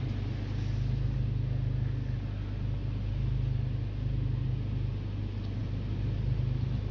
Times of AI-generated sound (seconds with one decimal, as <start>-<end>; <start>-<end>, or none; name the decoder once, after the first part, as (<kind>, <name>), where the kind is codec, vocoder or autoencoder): none